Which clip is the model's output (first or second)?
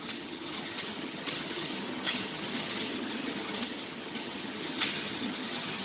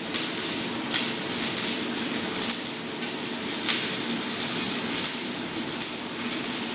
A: first